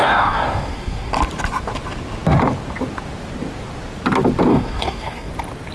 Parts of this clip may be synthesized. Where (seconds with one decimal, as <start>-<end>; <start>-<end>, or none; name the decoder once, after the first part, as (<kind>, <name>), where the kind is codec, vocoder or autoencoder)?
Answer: 0.0-1.1 (codec, DAC); 4.5-5.3